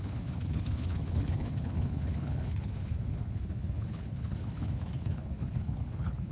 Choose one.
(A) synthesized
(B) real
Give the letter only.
A